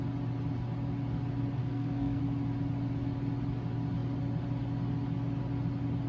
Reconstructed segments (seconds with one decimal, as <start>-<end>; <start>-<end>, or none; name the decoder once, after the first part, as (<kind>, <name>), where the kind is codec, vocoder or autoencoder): 1.6-2.2 (codec, SNAC)